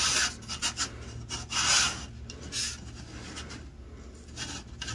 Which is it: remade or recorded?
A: recorded